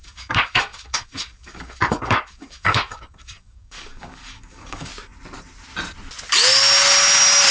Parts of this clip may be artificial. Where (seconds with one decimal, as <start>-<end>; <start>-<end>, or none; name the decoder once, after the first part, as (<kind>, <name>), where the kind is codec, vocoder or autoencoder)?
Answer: 0.0-4.9 (codec, DAC)